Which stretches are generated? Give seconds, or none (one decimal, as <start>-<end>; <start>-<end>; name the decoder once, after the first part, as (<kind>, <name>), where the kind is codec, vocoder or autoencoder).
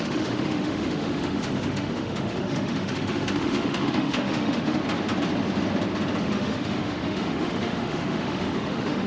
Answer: 0.0-4.8 (autoencoder, DAC-VAE); 6.2-9.1